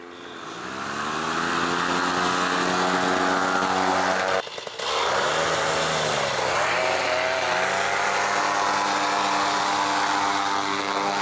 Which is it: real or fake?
real